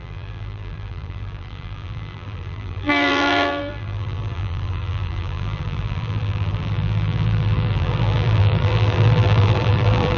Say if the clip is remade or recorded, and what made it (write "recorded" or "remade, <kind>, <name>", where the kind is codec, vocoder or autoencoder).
remade, vocoder, BigVGAN v2